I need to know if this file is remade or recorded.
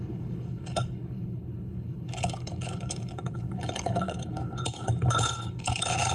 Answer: remade